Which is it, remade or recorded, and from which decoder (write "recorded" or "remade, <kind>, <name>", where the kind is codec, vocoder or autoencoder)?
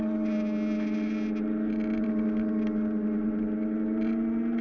recorded